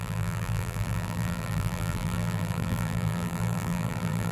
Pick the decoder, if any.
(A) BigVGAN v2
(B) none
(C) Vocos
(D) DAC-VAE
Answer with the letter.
A